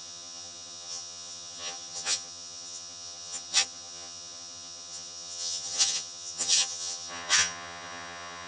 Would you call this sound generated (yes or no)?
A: yes